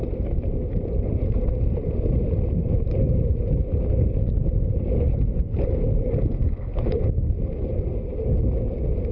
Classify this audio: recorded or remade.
recorded